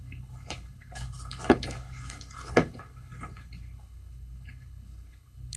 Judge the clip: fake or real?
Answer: fake